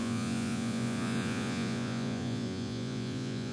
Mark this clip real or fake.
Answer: fake